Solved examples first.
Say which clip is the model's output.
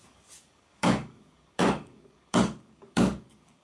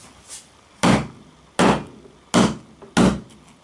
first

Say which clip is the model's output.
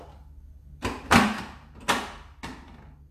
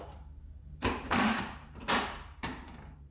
second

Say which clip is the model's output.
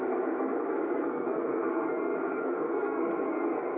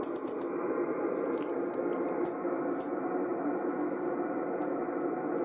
first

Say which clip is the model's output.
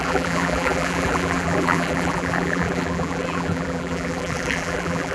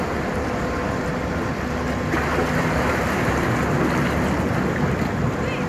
first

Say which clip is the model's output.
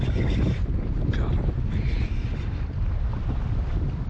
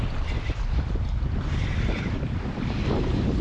second